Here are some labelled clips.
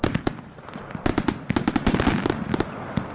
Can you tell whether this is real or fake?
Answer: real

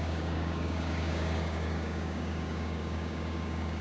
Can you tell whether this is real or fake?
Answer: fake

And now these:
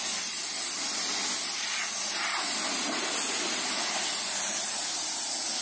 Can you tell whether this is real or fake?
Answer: real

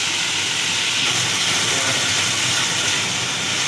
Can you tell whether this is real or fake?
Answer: real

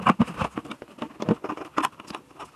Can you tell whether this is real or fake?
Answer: real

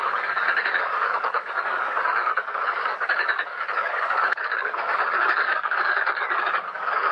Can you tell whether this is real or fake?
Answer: fake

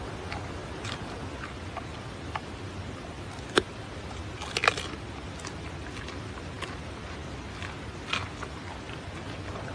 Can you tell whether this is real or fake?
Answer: real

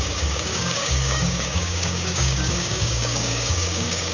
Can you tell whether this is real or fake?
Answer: fake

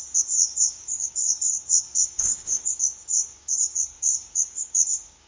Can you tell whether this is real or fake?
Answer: fake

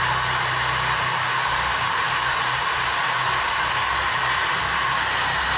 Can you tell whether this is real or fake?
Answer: real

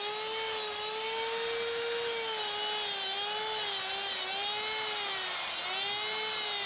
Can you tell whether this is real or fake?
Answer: real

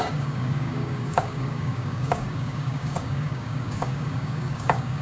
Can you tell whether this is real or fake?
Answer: fake